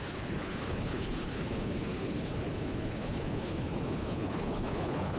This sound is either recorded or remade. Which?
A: remade